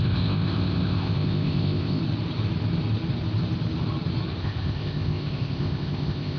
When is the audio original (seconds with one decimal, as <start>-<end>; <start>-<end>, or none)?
2.0-4.4